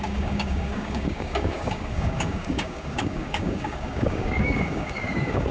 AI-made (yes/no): yes